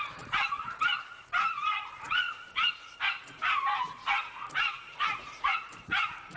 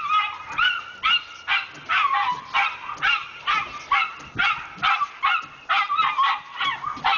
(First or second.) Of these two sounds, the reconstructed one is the first